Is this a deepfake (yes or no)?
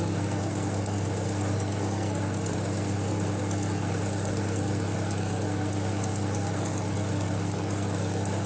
yes